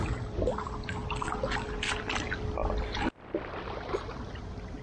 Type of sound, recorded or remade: recorded